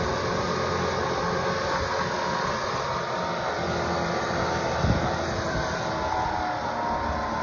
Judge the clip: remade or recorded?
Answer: recorded